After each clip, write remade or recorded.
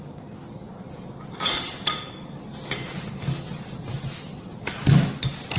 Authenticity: recorded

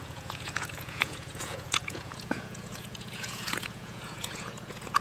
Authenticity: remade